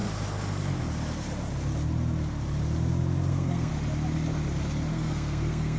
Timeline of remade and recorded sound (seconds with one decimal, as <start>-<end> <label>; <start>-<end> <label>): 0.0-3.3 recorded; 3.3-3.7 remade; 3.7-4.9 recorded; 4.9-5.8 remade